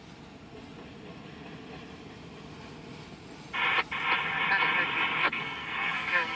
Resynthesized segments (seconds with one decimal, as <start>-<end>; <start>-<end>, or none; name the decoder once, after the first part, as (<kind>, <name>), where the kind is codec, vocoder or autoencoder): 5.2-6.4 (codec, SNAC)